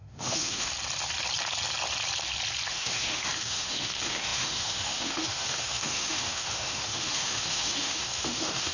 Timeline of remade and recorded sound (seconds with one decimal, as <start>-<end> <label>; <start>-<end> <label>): 0.0-0.7 remade; 0.7-2.7 recorded; 2.7-8.7 remade